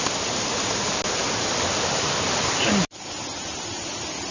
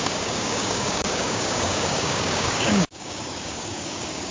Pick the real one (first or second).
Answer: first